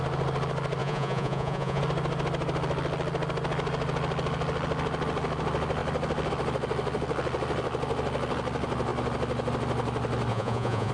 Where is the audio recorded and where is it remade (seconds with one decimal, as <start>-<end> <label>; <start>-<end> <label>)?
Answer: 0.0-0.8 recorded; 0.8-1.8 remade; 1.8-10.3 recorded; 10.3-10.9 remade